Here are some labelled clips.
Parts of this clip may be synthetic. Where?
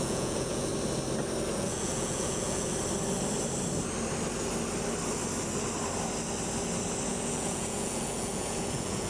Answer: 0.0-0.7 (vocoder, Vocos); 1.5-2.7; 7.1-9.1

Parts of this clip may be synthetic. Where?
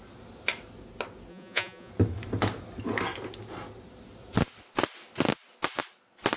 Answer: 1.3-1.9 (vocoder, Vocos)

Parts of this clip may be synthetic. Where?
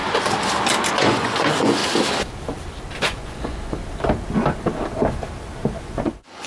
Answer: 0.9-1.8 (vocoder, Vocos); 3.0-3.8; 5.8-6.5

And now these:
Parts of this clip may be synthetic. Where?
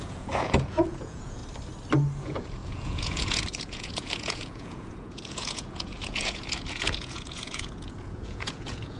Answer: 0.0-1.4 (vocoder, Vocos); 2.2-9.0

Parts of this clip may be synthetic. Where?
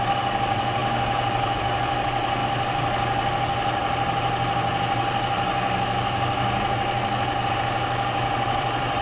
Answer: none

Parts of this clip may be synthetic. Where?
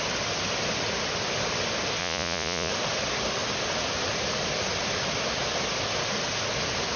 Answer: 2.0-2.7 (vocoder, Vocos)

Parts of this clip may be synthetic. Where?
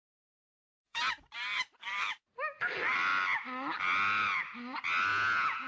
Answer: 0.6-1.1 (vocoder, Vocos); 5.1-5.7